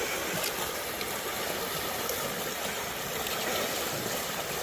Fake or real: real